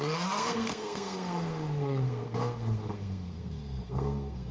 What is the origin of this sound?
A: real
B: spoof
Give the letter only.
B